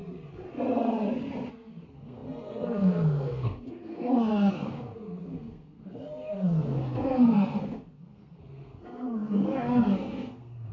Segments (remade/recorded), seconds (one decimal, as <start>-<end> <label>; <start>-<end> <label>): 0.0-1.5 recorded; 1.5-10.7 remade